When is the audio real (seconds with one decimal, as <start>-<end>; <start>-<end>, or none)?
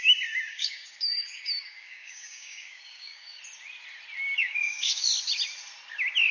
0.0-0.5; 3.4-4.4; 5.1-6.3